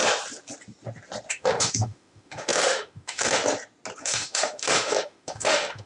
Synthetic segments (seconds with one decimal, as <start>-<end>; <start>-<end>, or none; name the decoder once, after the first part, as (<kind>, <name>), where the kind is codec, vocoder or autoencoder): 1.3-3.4 (autoencoder, DAC-VAE); 4.0-5.9